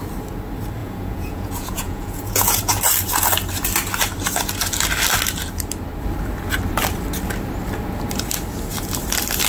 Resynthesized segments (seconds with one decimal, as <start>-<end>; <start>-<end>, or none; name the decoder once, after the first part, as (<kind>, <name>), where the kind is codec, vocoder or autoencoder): 0.8-2.8 (vocoder, Vocos)